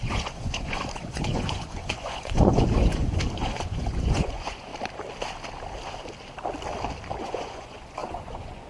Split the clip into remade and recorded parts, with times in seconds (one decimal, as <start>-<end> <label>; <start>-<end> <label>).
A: 0.0-4.7 remade; 4.7-7.2 recorded; 7.2-8.7 remade

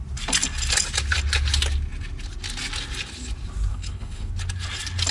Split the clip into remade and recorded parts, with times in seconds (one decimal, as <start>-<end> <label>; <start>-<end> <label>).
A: 0.0-3.7 recorded; 3.7-4.3 remade; 4.3-5.1 recorded